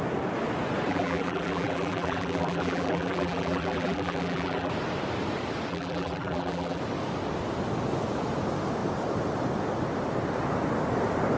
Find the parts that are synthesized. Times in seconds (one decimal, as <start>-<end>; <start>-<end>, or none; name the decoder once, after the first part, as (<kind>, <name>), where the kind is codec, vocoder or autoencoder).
0.9-4.7 (vocoder, BigVGAN v2); 5.7-6.8